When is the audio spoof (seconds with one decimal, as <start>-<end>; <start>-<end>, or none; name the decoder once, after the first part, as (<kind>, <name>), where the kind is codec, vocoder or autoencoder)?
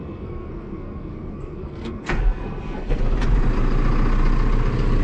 0.0-3.0 (codec, SNAC)